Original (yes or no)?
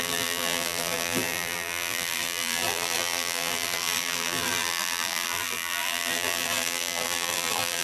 no